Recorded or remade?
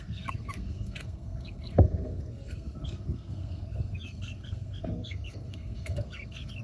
remade